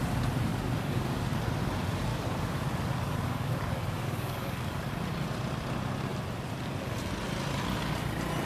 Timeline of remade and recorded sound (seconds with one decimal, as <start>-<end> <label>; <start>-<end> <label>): 0.0-0.5 recorded; 0.5-1.5 remade; 1.5-2.1 recorded; 2.1-4.8 remade; 4.8-8.5 recorded